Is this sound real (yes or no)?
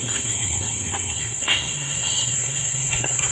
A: no